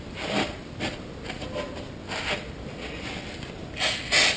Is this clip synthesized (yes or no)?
no